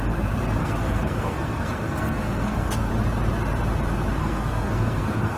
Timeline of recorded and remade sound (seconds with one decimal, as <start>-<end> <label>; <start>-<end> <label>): 0.0-0.6 recorded; 0.6-2.9 remade; 2.9-4.2 recorded; 4.2-5.4 remade